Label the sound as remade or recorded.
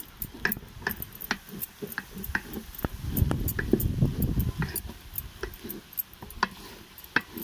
recorded